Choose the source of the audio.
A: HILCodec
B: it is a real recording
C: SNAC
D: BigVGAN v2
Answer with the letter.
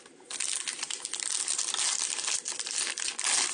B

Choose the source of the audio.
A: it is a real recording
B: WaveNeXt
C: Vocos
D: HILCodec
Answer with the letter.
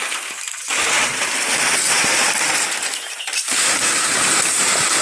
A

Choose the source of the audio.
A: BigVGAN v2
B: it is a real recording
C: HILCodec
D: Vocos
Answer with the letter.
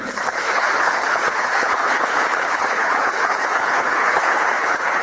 C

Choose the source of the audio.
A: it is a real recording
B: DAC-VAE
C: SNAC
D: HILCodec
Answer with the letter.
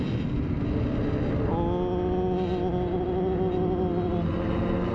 A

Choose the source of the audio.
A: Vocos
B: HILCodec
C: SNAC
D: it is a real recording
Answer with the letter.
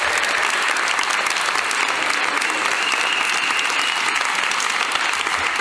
D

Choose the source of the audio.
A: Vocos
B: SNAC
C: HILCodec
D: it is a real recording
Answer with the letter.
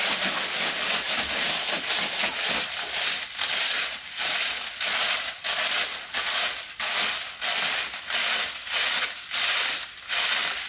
D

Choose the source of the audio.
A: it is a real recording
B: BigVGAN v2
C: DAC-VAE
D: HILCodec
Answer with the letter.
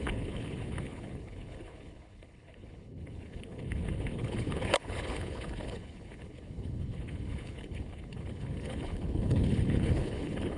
D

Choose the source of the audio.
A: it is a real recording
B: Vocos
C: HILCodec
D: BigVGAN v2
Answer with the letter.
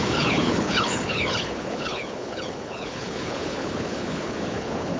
C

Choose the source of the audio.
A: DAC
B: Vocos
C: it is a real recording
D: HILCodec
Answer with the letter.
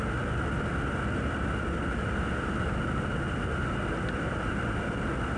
C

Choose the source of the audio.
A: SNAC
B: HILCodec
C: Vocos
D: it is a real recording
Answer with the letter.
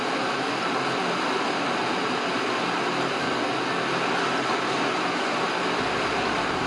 D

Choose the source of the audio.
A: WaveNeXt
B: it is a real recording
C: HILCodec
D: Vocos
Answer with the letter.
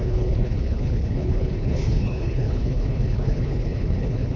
C